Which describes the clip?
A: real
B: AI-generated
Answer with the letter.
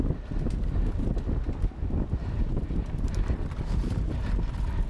A